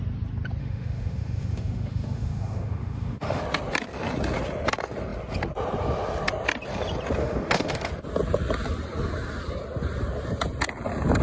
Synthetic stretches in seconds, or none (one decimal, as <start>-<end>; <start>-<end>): 0.6-3.4; 7.2-7.9